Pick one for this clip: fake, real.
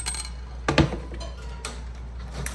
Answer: real